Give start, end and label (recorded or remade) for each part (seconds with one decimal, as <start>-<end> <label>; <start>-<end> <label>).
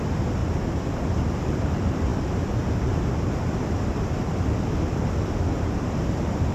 0.0-0.4 remade; 0.4-1.3 recorded; 1.3-2.1 remade; 2.1-5.3 recorded; 5.3-6.5 remade